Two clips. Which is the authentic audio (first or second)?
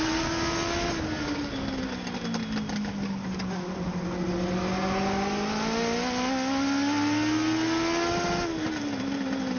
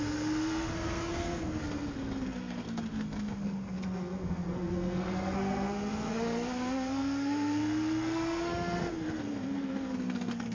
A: first